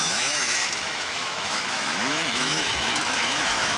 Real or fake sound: fake